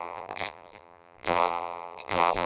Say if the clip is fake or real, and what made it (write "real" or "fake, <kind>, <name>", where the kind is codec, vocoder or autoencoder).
fake, vocoder, BigVGAN v2